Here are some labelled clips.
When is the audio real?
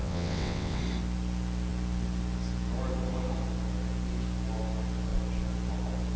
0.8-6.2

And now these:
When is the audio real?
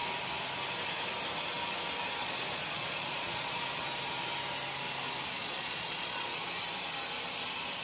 0.0-2.2; 3.6-5.4; 6.4-7.8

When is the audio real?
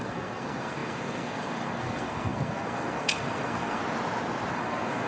3.8-4.5